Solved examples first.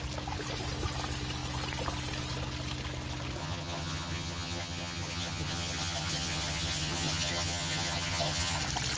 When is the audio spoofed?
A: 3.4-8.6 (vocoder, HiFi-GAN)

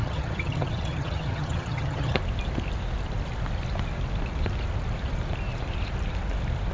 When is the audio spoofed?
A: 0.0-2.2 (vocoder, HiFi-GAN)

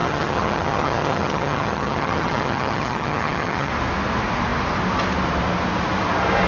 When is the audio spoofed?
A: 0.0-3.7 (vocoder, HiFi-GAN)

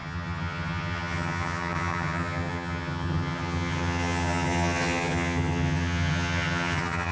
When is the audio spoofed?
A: 0.0-7.1 (vocoder, HiFi-GAN)

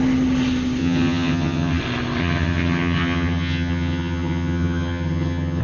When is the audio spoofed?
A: 0.8-1.8 (vocoder, HiFi-GAN); 2.2-5.6